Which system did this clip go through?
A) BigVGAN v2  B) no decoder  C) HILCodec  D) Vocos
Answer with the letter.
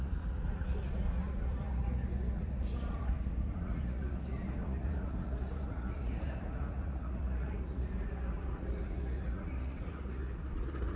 D